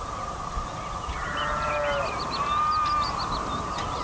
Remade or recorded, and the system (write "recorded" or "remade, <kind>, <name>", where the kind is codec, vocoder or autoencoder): recorded